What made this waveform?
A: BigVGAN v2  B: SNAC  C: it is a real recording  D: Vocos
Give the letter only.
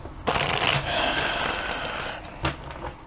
C